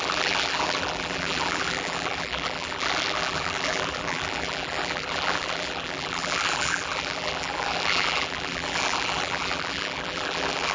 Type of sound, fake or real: fake